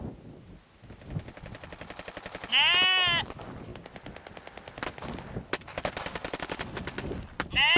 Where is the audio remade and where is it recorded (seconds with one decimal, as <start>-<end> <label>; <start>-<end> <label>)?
0.0-7.8 recorded